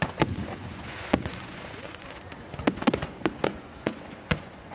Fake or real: fake